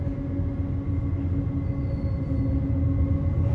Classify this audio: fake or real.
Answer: real